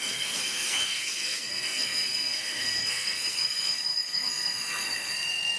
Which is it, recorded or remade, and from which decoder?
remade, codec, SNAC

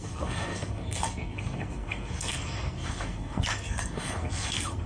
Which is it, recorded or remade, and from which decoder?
remade, codec, SNAC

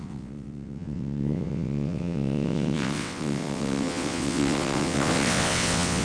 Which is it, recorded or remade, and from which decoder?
remade, vocoder, WaveNeXt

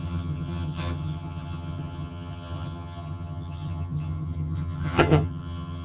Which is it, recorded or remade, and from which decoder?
remade, vocoder, HiFi-GAN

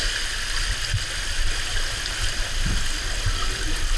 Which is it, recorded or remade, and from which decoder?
recorded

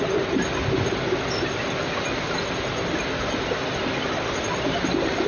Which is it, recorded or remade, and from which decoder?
recorded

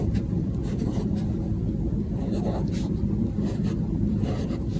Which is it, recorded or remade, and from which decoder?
remade, vocoder, BigVGAN v2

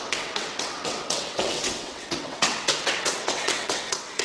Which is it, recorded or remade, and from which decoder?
remade, vocoder, WaveNeXt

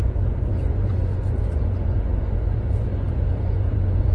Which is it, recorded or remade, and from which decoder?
remade, vocoder, Vocos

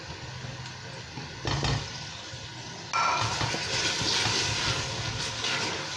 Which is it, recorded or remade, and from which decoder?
recorded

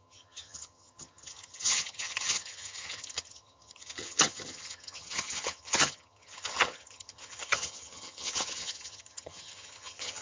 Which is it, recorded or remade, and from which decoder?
remade, vocoder, HiFi-GAN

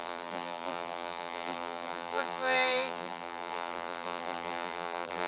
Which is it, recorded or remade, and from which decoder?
remade, vocoder, BigVGAN v2